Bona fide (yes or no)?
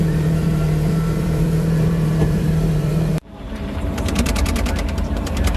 no